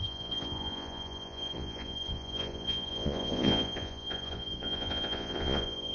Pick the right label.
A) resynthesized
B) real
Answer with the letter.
A